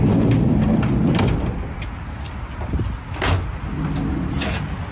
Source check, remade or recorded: recorded